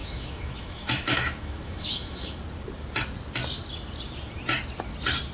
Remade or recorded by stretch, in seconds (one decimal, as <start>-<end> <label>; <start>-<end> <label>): 0.0-2.4 remade; 2.4-5.3 recorded